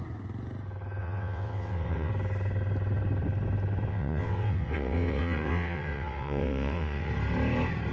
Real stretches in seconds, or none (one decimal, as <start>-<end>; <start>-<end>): 0.0-1.0; 2.1-3.9; 7.1-7.9